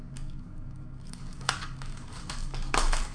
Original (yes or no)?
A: no